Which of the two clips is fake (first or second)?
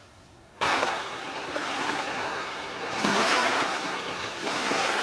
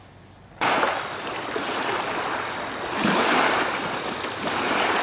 first